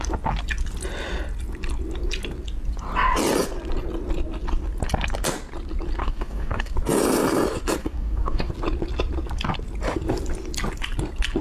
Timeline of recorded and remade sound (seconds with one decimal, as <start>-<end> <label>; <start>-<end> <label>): 0.0-6.0 recorded; 6.0-6.7 remade; 6.7-7.8 recorded; 7.8-8.5 remade; 8.5-11.4 recorded